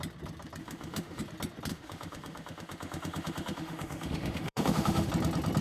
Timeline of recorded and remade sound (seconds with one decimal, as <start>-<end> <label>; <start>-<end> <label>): 0.0-0.6 recorded; 0.6-1.2 remade; 1.2-1.7 recorded; 1.7-5.1 remade; 5.1-5.6 recorded